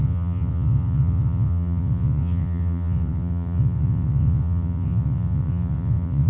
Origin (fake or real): fake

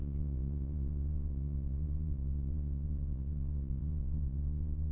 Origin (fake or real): fake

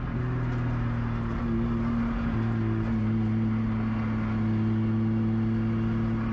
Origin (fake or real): real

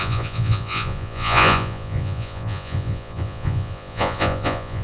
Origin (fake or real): fake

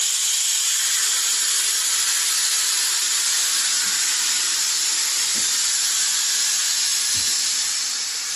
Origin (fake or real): fake